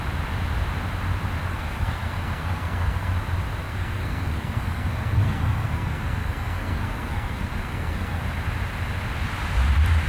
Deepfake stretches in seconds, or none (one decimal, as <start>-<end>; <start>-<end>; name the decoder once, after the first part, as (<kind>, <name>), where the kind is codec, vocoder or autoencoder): 1.5-3.1 (codec, SNAC); 3.6-8.2